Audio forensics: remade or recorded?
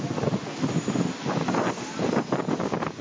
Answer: recorded